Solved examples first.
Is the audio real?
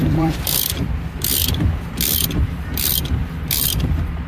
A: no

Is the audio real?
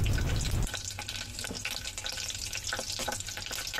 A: yes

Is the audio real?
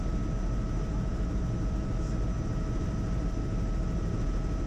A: yes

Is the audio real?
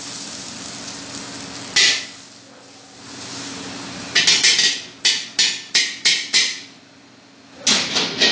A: yes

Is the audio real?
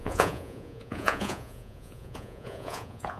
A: no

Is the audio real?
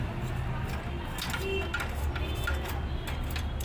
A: yes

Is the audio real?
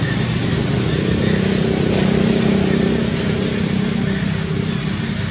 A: yes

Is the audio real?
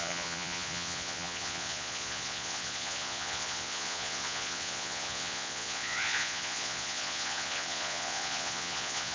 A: no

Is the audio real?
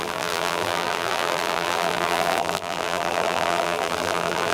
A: no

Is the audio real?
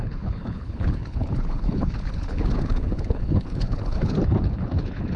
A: no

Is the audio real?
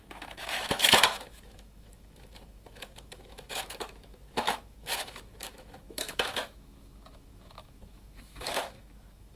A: no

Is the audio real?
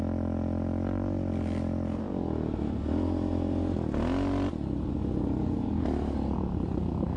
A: yes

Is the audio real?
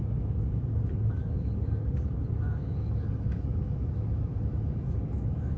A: no